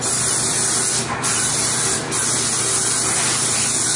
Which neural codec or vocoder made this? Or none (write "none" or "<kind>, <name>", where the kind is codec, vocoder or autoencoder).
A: none